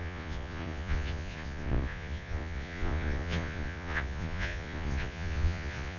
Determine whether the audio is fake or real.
fake